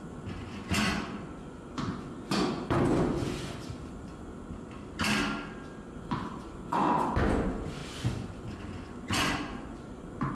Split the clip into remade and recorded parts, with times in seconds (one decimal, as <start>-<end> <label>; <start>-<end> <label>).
0.0-4.3 remade; 4.3-6.0 recorded; 6.0-10.3 remade